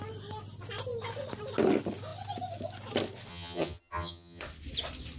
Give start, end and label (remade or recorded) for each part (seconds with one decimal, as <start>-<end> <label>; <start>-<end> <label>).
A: 0.0-3.3 recorded; 3.3-4.4 remade; 4.4-5.2 recorded